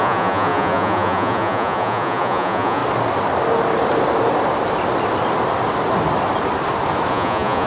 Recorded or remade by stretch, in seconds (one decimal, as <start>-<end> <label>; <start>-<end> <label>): 0.0-2.8 remade; 2.8-7.1 recorded; 7.1-7.7 remade

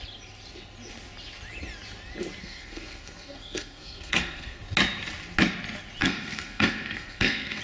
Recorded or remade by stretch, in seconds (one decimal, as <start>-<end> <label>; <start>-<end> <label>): 0.0-2.4 recorded; 2.4-4.6 remade; 4.6-6.0 recorded; 6.0-7.6 remade

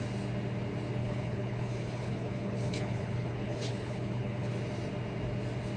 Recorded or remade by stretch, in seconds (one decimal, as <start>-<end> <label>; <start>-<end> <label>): 0.0-1.0 recorded; 1.0-4.5 remade; 4.5-5.8 recorded

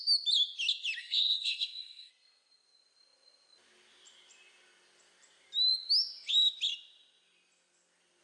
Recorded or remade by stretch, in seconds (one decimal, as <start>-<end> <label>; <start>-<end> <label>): 0.0-1.0 recorded; 1.0-2.1 remade; 2.1-8.2 recorded

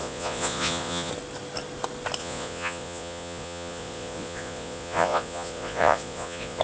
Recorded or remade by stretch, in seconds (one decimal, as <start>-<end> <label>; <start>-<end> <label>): 0.0-1.1 remade; 1.1-2.2 recorded; 2.2-6.6 remade

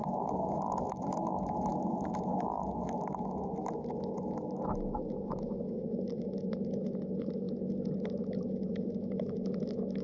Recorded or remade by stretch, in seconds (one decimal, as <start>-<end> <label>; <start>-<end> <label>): 0.0-10.0 remade

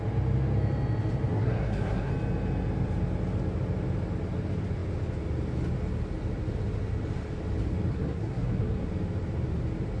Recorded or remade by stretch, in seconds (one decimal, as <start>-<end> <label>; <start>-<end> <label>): 0.0-1.3 recorded; 1.3-2.1 remade; 2.1-7.9 recorded; 7.9-8.9 remade; 8.9-10.0 recorded

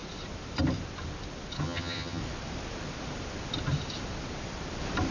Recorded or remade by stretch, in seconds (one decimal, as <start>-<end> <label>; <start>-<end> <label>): 0.0-1.6 recorded; 1.6-2.2 remade; 2.2-5.1 recorded